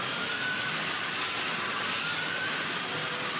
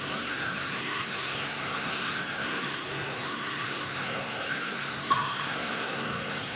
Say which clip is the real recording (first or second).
first